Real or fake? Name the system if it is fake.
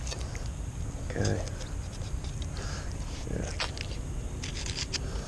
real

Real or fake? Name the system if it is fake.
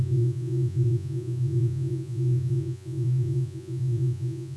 fake, vocoder, Vocos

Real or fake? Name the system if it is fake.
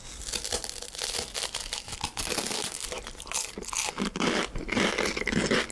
real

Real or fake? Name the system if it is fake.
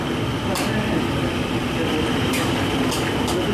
real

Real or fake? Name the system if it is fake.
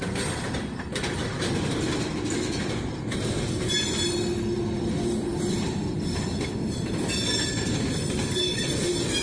real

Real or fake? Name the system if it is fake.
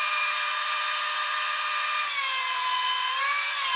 fake, vocoder, Vocos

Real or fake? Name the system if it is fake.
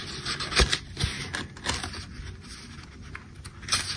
real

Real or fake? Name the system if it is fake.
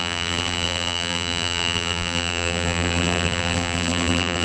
fake, vocoder, BigVGAN v2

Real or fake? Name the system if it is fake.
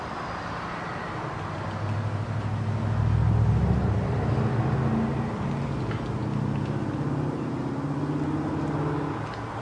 real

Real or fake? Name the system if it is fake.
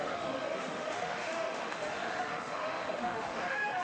fake, autoencoder, DAC-VAE